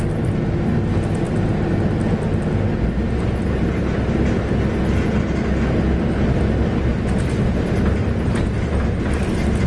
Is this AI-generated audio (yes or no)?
no